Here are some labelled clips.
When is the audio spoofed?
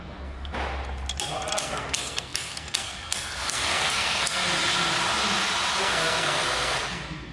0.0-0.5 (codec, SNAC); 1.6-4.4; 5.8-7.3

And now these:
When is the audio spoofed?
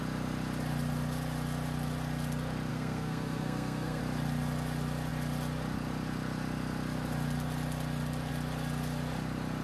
2.7-4.0 (codec, SNAC)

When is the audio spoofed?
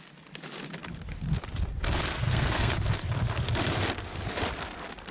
2.1-2.7 (codec, SNAC)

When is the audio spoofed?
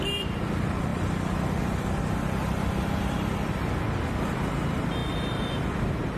none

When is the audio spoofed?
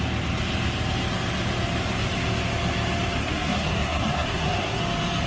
3.2-4.8 (codec, SNAC)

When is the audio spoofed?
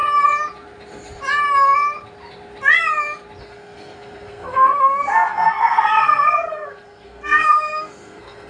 3.4-8.5 (codec, SNAC)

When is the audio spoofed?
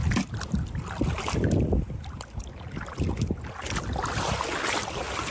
none